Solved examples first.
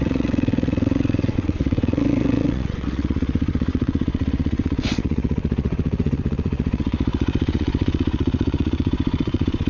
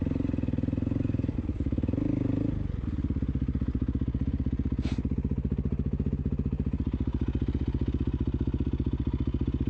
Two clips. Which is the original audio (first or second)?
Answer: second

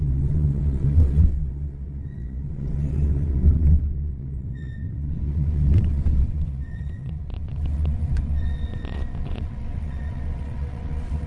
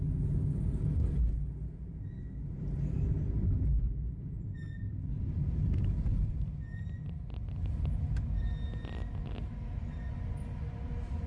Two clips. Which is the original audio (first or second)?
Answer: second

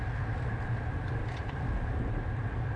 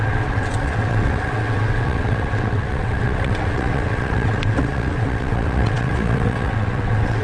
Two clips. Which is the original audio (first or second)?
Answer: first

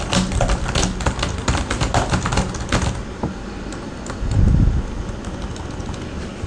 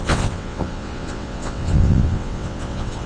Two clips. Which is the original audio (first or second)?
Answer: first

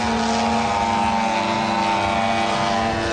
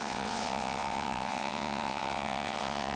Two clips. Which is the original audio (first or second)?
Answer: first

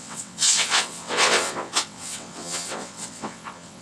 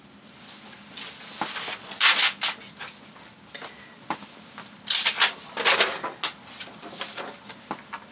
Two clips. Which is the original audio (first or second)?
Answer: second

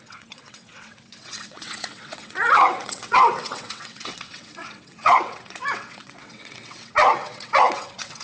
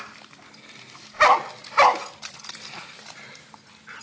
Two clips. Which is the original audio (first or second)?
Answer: second